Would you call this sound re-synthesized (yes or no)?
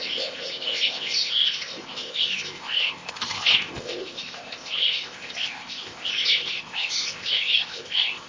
yes